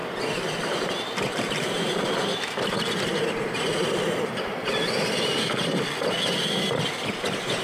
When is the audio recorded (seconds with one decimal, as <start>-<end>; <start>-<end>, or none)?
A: none